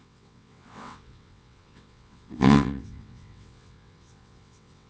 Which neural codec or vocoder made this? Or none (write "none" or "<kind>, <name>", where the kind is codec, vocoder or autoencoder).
vocoder, WaveNeXt